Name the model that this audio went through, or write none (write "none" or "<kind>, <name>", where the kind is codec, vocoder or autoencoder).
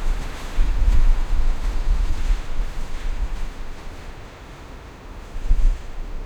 autoencoder, DAC-VAE